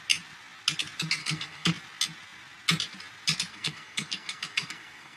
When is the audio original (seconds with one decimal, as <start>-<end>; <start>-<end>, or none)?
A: 0.0-1.2; 1.7-3.5